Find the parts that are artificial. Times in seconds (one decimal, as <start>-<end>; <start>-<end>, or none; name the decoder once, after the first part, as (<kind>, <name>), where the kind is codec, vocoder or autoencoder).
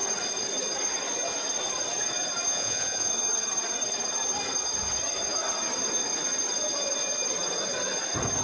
2.5-3.1 (vocoder, Vocos)